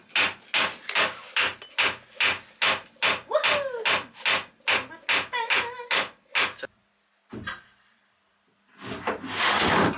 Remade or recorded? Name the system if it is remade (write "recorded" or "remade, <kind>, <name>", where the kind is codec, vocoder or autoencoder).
recorded